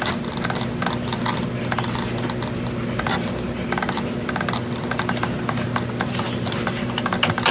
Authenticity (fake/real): real